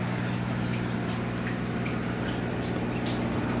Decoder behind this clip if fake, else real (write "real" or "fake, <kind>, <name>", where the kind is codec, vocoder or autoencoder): fake, vocoder, BigVGAN v2